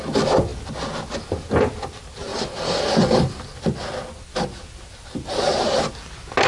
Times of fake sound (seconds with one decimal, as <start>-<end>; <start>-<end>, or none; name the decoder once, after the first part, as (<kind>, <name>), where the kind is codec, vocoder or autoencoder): 2.3-3.5 (vocoder, BigVGAN v2)